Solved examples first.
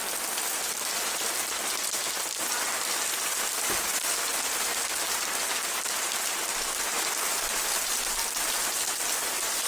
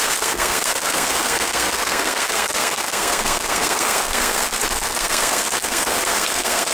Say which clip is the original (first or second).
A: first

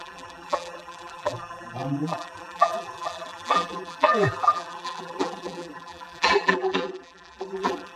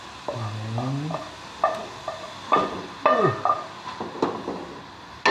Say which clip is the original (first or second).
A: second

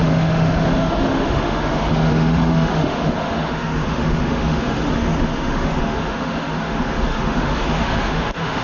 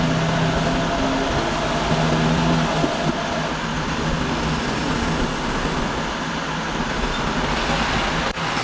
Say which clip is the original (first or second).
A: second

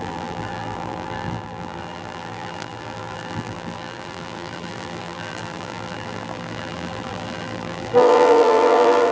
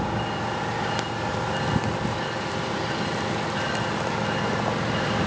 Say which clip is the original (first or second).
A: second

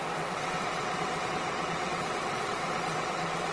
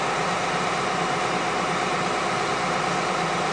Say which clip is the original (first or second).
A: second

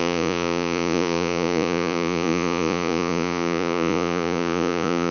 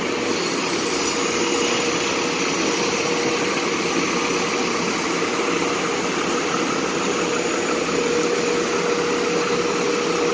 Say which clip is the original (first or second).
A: second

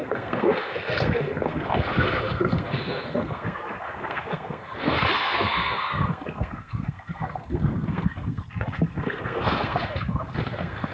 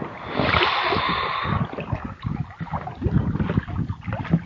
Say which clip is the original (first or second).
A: second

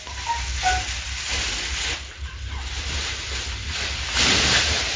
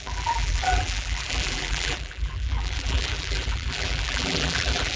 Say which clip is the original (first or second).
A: first